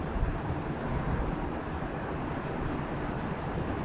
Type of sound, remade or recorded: recorded